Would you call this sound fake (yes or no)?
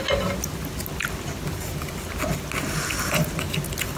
no